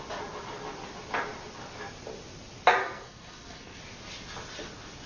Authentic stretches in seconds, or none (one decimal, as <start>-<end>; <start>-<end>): 0.0-2.8; 3.8-5.1

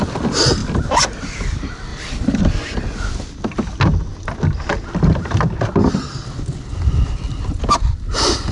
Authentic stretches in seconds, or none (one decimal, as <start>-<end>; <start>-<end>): 0.0-0.6; 1.2-1.9; 2.5-8.5

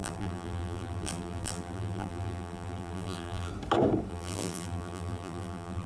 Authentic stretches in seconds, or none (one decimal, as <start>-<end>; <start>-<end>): 3.5-4.1

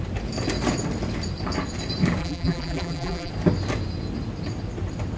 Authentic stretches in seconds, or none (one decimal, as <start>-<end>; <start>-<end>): 0.0-2.2; 3.3-5.2

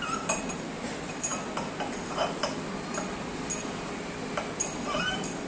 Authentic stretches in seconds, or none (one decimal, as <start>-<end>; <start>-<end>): 0.0-5.5